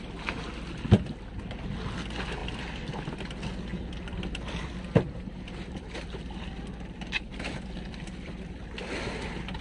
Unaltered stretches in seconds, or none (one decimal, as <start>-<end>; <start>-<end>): 0.0-2.4; 3.2-3.7; 8.6-9.6